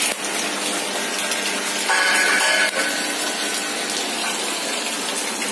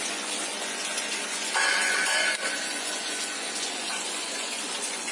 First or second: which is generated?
second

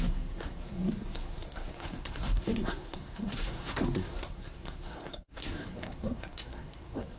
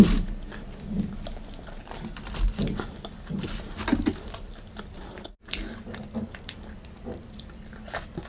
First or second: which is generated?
first